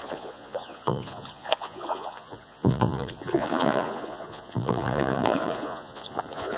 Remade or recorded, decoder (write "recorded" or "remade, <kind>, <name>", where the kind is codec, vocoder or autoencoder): remade, vocoder, Vocos